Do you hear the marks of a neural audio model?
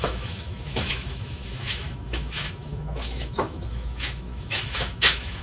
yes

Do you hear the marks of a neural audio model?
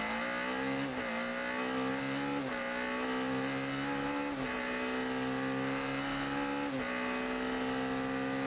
no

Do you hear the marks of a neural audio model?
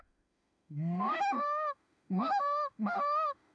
yes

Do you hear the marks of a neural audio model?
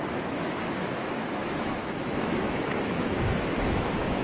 yes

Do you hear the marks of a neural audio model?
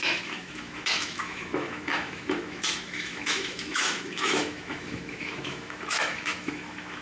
yes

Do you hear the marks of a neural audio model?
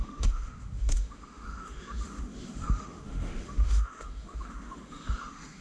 yes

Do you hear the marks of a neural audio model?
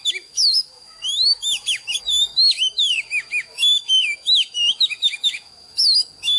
yes